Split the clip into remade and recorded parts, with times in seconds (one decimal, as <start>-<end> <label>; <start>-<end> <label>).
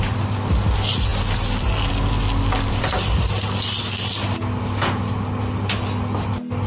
0.0-6.7 recorded